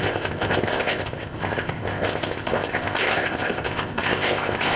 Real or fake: fake